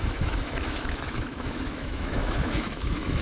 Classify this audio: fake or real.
fake